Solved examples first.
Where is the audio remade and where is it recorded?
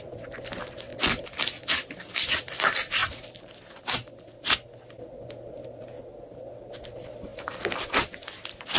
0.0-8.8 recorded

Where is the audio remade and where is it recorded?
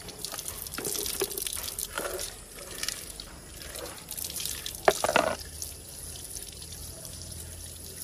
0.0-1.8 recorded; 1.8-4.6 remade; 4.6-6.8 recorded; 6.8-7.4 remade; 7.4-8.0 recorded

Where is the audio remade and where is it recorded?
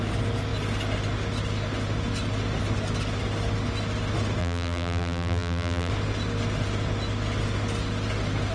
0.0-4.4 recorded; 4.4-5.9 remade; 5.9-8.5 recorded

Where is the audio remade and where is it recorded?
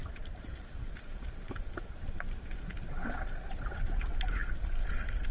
0.0-4.4 remade; 4.4-5.3 recorded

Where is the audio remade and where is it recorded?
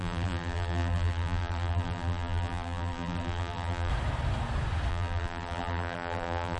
0.0-3.9 remade; 3.9-4.9 recorded; 4.9-6.6 remade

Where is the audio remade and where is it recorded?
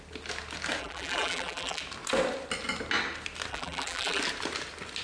0.0-0.8 recorded; 0.8-1.8 remade; 1.8-3.5 recorded; 3.5-4.2 remade; 4.2-5.0 recorded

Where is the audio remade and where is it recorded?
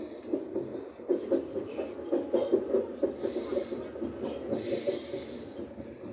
0.0-1.1 recorded; 1.1-1.7 remade; 1.7-2.5 recorded; 2.5-3.5 remade; 3.5-6.1 recorded